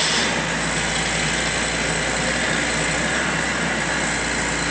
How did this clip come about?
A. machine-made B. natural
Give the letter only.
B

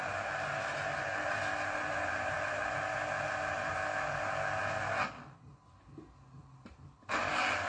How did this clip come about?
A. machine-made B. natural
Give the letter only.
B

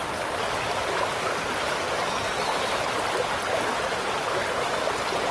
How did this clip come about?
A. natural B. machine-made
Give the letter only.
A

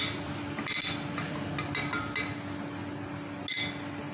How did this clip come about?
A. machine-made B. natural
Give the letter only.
B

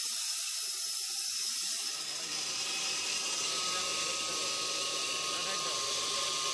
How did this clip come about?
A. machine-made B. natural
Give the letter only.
B